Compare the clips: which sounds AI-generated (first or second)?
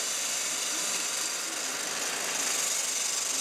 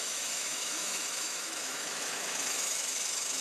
second